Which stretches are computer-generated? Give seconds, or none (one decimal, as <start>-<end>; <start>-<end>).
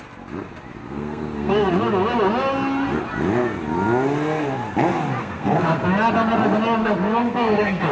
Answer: 0.8-1.7; 5.2-5.9; 6.8-7.9